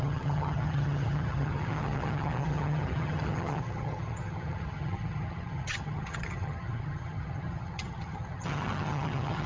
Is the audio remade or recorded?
remade